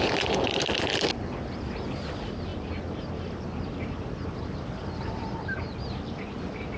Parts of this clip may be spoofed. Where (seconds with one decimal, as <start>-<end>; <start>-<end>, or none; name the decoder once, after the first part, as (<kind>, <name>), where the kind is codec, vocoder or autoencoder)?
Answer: none